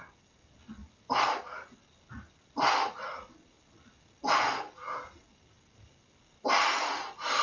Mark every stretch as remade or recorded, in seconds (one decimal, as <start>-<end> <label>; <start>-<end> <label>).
0.0-7.4 recorded